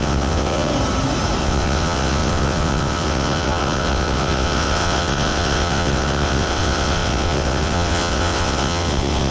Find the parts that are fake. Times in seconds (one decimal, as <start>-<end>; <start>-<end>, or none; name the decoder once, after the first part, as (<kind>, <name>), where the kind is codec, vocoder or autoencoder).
0.0-0.7 (vocoder, WaveNeXt); 1.4-9.3